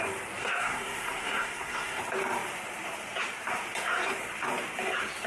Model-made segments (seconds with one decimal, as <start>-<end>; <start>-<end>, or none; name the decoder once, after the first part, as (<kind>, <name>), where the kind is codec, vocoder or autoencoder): 0.4-2.0 (codec, SNAC)